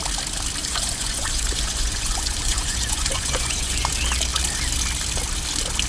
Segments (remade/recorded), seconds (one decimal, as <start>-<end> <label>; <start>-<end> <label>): 0.0-0.6 recorded; 0.6-3.9 remade; 3.9-5.9 recorded